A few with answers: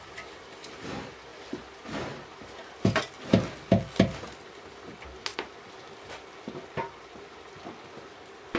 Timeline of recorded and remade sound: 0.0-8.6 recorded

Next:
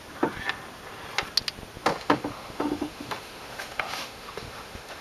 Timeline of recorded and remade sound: 0.0-1.9 recorded; 1.9-5.0 remade

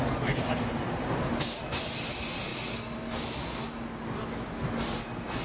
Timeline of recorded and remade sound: 0.0-5.4 recorded

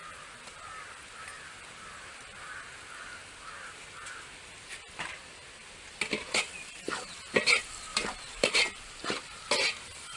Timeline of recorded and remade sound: 0.0-7.9 recorded; 7.9-8.6 remade; 8.6-10.2 recorded

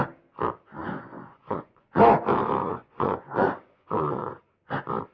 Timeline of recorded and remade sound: 0.0-0.8 recorded; 0.8-2.0 remade; 2.0-2.6 recorded; 2.6-4.4 remade; 4.4-5.1 recorded

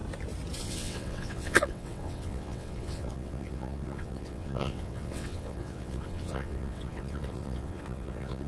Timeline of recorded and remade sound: 0.0-0.6 recorded; 0.6-8.5 remade